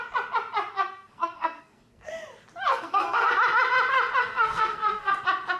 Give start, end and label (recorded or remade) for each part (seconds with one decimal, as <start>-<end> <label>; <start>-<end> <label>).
0.0-0.7 recorded; 0.7-2.1 remade; 2.1-2.7 recorded; 2.7-3.3 remade; 3.3-4.2 recorded; 4.2-5.1 remade; 5.1-5.6 recorded